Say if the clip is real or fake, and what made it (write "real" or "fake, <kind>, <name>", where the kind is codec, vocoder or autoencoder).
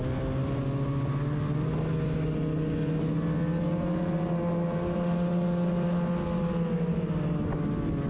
real